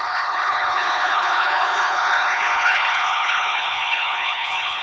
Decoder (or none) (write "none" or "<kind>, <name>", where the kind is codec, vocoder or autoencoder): codec, HILCodec